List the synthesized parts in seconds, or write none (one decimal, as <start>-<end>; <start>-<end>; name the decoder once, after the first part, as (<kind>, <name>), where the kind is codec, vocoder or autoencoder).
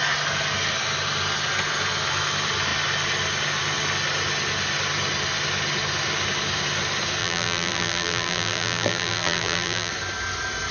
7.2-9.9 (vocoder, BigVGAN v2)